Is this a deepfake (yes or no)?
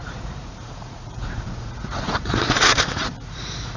yes